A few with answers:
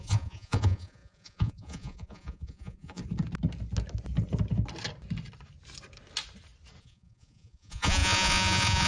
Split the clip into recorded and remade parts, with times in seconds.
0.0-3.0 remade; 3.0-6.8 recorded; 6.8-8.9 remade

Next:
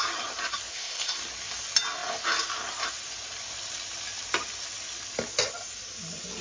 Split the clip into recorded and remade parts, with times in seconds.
0.0-0.7 recorded; 0.7-1.2 remade; 1.2-6.4 recorded

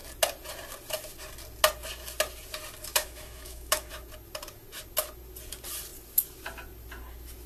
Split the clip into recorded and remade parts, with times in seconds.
0.0-2.9 recorded; 2.9-3.9 remade; 3.9-7.5 recorded

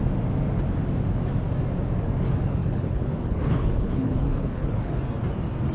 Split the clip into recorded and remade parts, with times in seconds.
0.0-2.6 recorded; 2.6-5.0 remade; 5.0-5.7 recorded